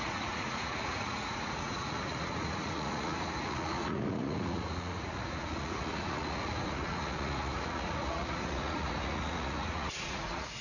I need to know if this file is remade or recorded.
remade